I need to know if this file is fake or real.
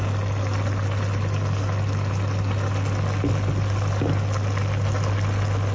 real